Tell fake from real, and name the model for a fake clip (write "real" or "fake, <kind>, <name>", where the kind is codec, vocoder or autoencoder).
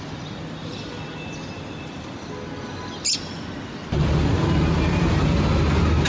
real